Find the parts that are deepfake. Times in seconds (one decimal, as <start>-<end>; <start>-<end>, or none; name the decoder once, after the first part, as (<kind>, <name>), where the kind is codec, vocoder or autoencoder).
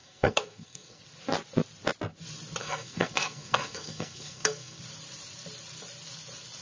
0.0-1.0 (codec, SNAC); 2.6-4.8